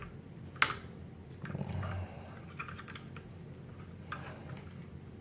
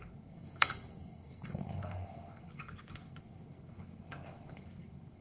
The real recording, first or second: first